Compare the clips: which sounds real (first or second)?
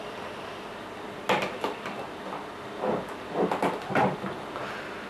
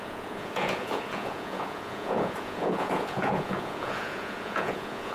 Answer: first